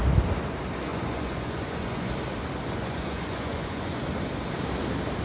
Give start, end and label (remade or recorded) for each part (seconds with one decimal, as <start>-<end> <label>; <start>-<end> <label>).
0.0-0.9 recorded; 0.9-2.1 remade; 2.1-2.8 recorded; 2.8-4.1 remade; 4.1-5.2 recorded